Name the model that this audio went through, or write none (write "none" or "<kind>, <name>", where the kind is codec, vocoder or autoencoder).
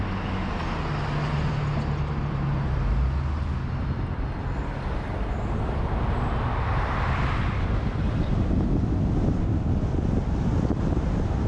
none